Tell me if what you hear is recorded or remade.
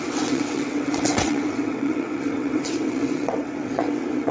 remade